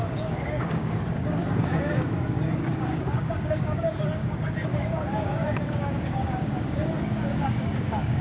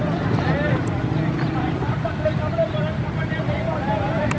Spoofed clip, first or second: first